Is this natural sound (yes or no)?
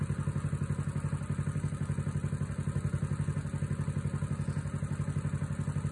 yes